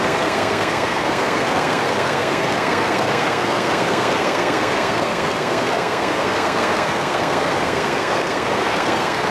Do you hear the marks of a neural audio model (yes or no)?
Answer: yes